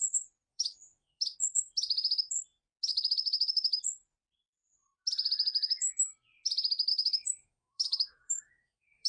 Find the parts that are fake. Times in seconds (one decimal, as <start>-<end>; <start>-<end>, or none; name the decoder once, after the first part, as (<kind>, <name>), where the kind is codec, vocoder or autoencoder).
0.5-1.2 (autoencoder, DAC-VAE); 2.9-3.8; 6.9-9.1